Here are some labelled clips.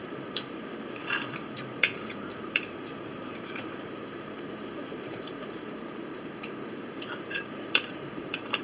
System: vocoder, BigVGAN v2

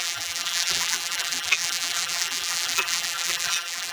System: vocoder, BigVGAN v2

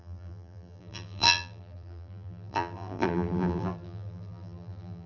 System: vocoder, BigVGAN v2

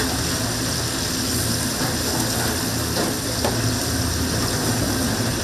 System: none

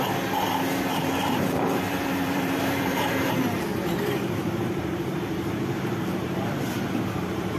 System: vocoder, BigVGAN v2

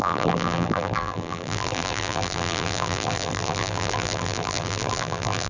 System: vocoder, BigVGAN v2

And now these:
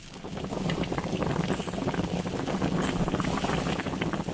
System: none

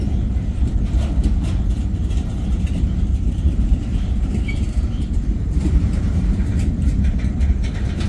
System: vocoder, BigVGAN v2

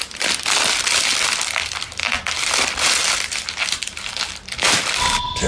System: vocoder, BigVGAN v2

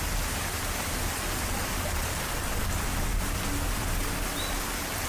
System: none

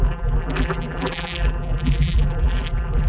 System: vocoder, BigVGAN v2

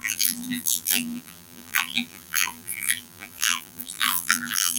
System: vocoder, BigVGAN v2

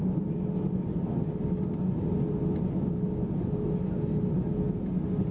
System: none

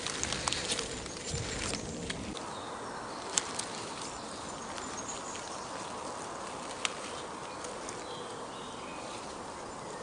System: none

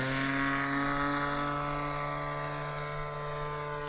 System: none